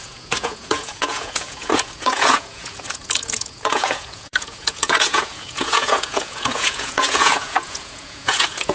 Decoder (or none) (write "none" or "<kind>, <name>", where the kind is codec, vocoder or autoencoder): vocoder, Vocos